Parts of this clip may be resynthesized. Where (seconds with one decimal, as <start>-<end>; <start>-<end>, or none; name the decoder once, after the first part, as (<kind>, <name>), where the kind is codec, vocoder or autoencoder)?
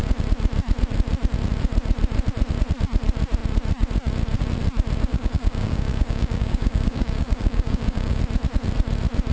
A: 5.1-8.2 (codec, DAC)